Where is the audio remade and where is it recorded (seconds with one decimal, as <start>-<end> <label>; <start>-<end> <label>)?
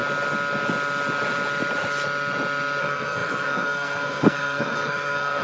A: 0.0-2.8 recorded; 2.8-5.4 remade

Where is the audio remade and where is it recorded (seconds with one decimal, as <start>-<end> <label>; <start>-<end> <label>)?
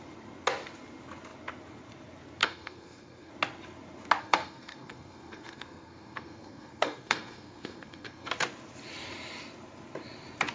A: 0.0-2.4 recorded; 2.4-3.3 remade; 3.3-4.2 recorded; 4.2-8.3 remade; 8.3-10.5 recorded